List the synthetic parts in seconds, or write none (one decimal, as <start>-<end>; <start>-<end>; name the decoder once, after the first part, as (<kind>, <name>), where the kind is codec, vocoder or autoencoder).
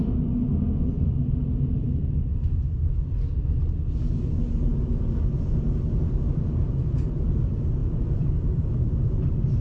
0.8-1.4 (vocoder, BigVGAN v2); 6.1-9.6